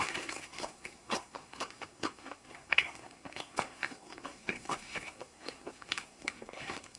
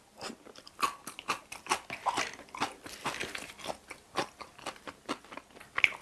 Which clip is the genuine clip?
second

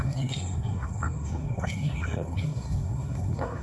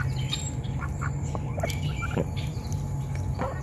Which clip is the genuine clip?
second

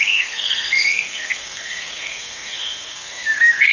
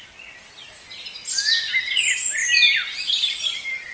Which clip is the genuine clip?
second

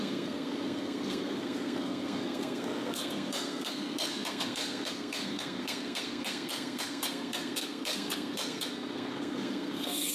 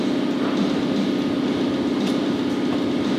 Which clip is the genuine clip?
second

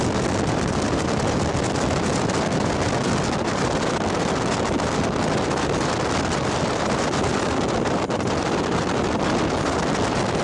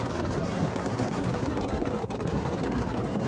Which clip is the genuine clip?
first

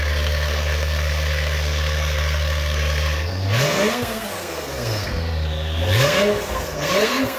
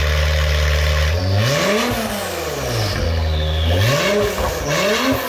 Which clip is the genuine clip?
second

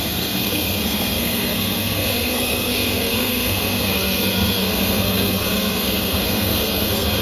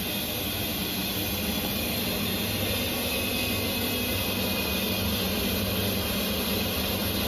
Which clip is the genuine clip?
second